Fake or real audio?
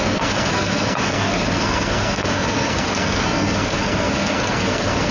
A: fake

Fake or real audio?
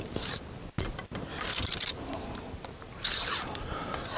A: fake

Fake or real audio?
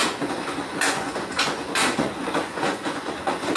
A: fake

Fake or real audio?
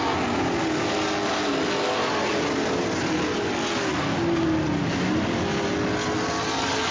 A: real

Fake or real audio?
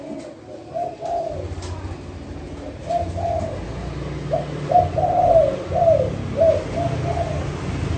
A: real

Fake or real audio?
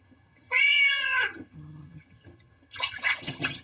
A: fake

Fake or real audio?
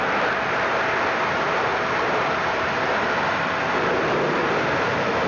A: real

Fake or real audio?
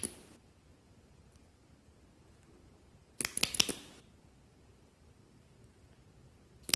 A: real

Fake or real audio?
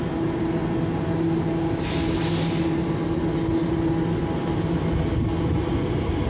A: real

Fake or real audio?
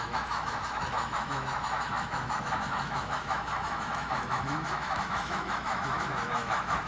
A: fake